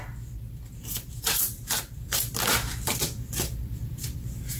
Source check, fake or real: fake